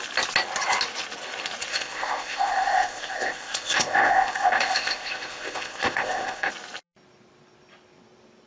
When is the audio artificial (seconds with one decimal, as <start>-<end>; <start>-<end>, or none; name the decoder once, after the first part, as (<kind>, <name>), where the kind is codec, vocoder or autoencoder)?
1.7-6.5 (codec, ZipCodec)